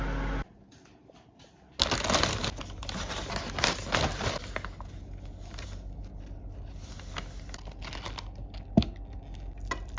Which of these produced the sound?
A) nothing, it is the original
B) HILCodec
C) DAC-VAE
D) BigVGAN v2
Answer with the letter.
A